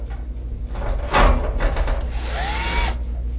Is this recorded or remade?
recorded